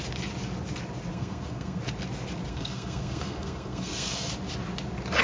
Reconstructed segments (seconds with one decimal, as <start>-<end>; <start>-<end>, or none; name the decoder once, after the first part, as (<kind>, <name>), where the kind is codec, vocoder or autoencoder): 1.1-1.8 (codec, SNAC); 2.5-4.3